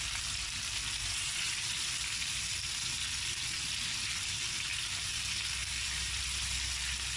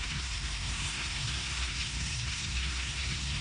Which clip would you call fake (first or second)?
second